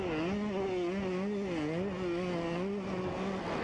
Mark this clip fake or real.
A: real